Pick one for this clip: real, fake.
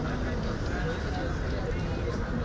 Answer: real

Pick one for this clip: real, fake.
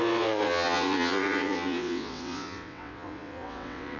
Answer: fake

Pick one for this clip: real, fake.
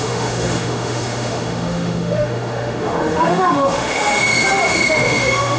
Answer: fake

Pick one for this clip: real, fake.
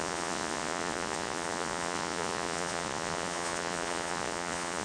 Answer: fake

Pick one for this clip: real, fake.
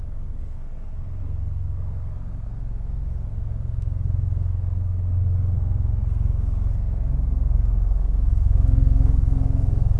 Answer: fake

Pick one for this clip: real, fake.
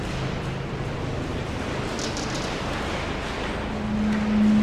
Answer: real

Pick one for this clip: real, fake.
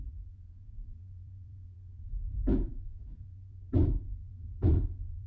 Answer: fake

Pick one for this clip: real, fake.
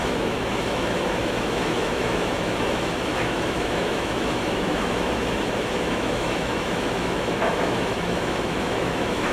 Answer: fake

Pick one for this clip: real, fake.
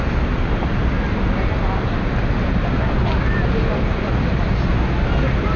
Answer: real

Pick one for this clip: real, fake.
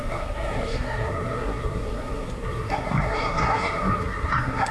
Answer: fake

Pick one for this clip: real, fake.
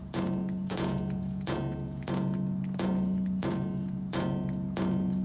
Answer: fake